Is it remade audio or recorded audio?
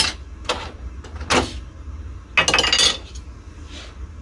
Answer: recorded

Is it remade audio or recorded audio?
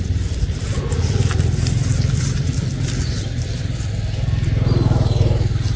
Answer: recorded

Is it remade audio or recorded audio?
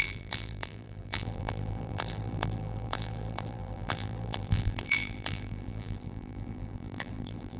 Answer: remade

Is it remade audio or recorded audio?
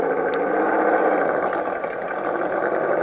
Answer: recorded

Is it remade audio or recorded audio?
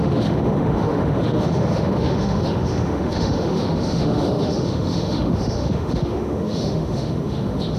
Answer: remade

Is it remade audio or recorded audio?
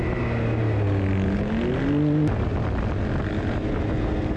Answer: recorded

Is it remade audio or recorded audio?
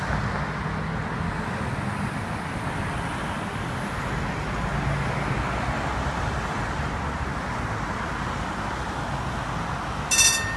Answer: recorded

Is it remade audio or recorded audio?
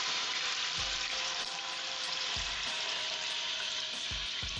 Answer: remade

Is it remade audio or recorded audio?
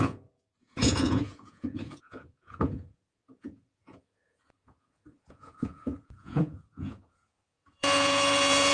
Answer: remade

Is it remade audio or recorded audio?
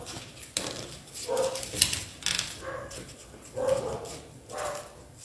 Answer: recorded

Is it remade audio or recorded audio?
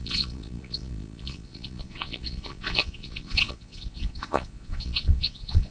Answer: remade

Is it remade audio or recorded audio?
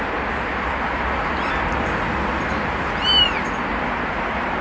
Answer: recorded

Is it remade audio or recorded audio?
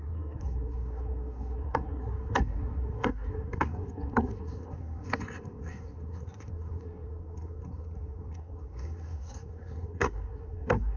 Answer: remade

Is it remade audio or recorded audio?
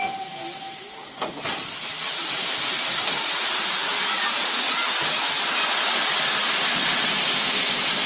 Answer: recorded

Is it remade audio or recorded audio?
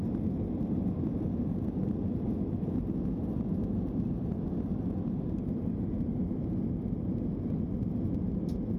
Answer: recorded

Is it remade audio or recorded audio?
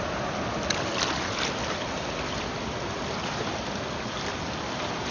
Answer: recorded